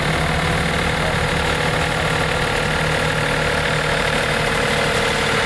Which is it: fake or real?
real